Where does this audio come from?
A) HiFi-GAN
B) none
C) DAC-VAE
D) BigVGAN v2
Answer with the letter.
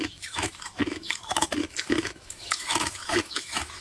C